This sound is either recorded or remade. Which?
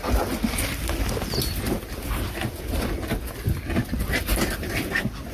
recorded